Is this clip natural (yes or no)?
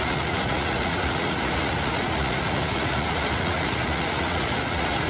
no